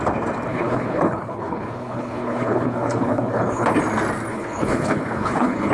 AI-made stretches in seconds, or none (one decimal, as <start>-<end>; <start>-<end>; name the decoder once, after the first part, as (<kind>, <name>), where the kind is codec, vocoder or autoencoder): 0.5-3.7 (codec, HILCodec); 4.3-5.7